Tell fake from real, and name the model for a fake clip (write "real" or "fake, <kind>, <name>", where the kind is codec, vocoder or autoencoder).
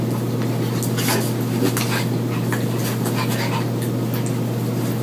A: real